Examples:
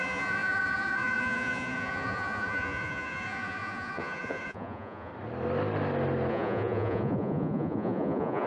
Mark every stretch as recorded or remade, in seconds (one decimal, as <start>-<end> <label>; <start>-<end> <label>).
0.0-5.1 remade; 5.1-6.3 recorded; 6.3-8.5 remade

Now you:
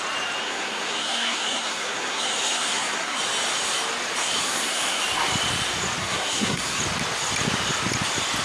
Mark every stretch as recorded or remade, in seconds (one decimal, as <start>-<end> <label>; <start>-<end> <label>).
0.0-0.4 recorded; 0.4-3.2 remade; 3.2-4.2 recorded; 4.2-5.0 remade; 5.0-6.0 recorded; 6.0-6.8 remade; 6.8-8.4 recorded

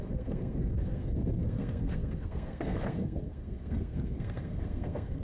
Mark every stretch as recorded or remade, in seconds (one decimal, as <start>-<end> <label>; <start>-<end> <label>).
0.0-5.2 remade

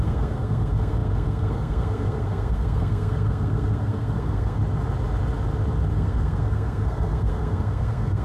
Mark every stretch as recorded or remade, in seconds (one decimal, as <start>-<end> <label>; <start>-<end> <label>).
0.0-4.6 remade; 4.6-5.9 recorded; 5.9-8.2 remade

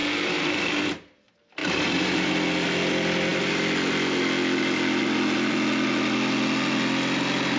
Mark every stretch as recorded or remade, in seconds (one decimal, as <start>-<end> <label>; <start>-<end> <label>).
0.0-0.9 remade; 0.9-1.6 recorded; 1.6-2.3 remade; 2.3-7.6 recorded

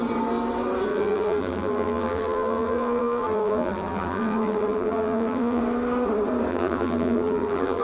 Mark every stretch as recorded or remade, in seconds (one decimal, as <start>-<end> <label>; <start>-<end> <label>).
0.0-0.9 recorded; 0.9-5.6 remade; 5.6-6.5 recorded; 6.5-7.8 remade

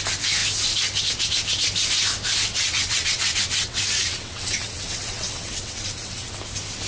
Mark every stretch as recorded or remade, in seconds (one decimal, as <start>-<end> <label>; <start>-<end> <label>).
0.0-2.5 recorded; 2.5-6.3 remade; 6.3-6.9 recorded